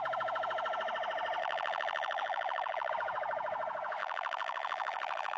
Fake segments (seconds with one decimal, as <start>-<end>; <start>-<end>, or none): 1.4-2.9; 4.0-5.4